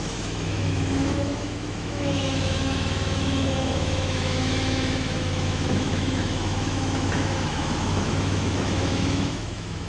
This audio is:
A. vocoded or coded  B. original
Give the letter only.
A